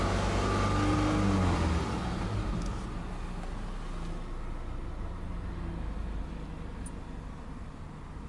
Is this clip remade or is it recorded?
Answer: recorded